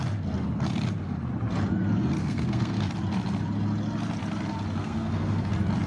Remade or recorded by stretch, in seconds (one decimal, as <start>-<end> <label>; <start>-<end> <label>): 0.0-2.2 recorded; 2.2-2.9 remade; 2.9-4.8 recorded; 4.8-5.5 remade; 5.5-5.9 recorded